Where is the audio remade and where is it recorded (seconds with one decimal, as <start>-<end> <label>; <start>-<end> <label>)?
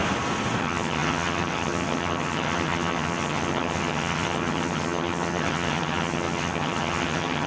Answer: 0.0-0.6 recorded; 0.6-7.5 remade